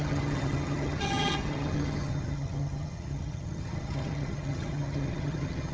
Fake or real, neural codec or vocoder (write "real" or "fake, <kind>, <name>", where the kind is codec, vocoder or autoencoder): fake, vocoder, HiFi-GAN